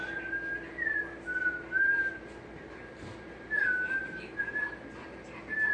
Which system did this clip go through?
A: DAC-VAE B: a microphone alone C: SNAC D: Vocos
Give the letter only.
B